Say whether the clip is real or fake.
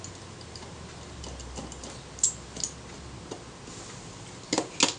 real